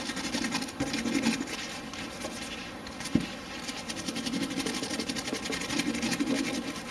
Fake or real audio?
real